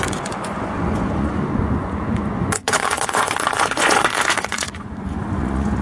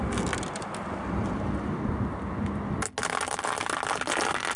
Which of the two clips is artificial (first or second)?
first